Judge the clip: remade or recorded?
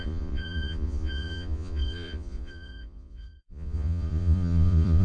remade